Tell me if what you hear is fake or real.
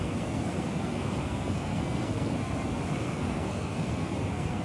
fake